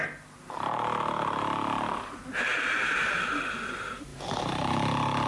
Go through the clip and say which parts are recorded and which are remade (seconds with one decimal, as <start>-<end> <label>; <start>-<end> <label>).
0.0-2.5 recorded; 2.5-3.2 remade; 3.2-4.1 recorded; 4.1-5.3 remade